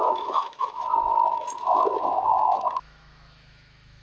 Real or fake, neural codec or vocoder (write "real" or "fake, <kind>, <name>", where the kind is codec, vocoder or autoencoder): fake, autoencoder, DAC-VAE